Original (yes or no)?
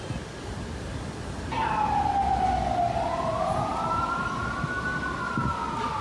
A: yes